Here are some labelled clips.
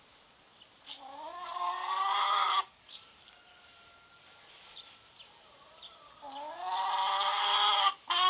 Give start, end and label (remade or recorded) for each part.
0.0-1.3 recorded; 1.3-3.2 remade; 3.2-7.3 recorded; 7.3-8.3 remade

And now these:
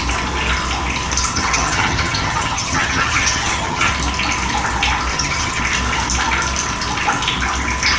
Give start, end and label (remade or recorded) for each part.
0.0-1.3 recorded; 1.3-3.9 remade; 3.9-5.1 recorded; 5.1-5.6 remade; 5.6-8.0 recorded

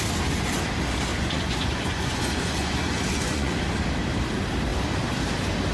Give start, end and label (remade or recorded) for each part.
0.0-1.1 recorded; 1.1-3.6 remade; 3.6-5.7 recorded